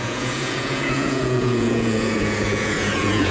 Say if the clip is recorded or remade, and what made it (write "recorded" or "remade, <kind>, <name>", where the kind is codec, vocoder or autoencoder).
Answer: remade, vocoder, Vocos